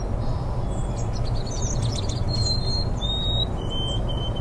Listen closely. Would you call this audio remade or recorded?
recorded